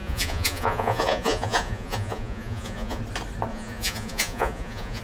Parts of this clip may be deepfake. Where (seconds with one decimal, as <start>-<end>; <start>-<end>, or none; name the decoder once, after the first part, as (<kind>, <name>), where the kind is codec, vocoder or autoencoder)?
0.0-3.0 (vocoder, Vocos); 3.5-5.0